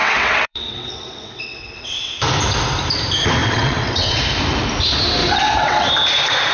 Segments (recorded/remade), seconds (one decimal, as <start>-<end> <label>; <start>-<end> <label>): 0.0-2.1 remade; 2.1-3.4 recorded; 3.4-4.2 remade; 4.2-5.2 recorded; 5.2-5.9 remade; 5.9-6.5 recorded